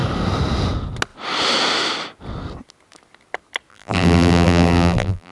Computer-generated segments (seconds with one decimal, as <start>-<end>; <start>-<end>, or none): 3.7-5.3